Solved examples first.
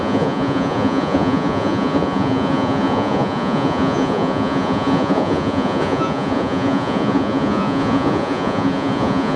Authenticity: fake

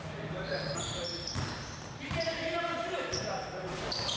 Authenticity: fake